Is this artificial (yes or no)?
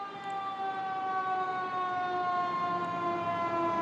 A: no